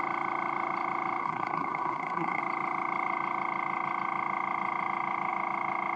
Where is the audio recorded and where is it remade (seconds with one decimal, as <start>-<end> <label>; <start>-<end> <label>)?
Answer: 0.0-1.2 recorded; 1.2-2.4 remade; 2.4-6.0 recorded